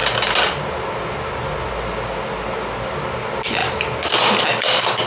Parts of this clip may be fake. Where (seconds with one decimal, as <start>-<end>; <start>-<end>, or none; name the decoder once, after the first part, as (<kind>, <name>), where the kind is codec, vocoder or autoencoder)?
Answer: none